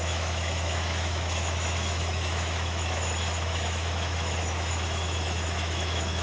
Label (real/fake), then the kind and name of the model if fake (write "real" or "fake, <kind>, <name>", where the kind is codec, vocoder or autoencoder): fake, autoencoder, DAC-VAE